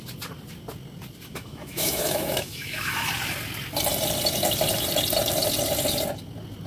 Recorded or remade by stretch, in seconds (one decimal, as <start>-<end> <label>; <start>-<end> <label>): 0.0-1.3 recorded; 1.3-3.1 remade; 3.1-6.7 recorded